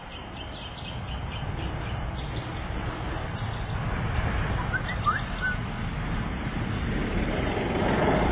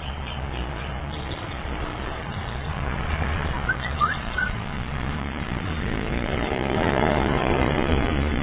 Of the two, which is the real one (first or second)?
first